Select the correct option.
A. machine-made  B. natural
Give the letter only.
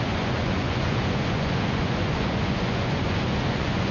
A